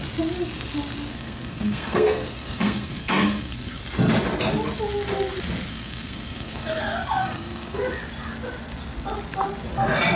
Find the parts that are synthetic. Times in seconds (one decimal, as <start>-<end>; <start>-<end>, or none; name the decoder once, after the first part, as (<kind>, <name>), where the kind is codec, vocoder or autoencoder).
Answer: 1.1-3.8 (codec, SNAC); 5.7-6.8; 7.2-7.8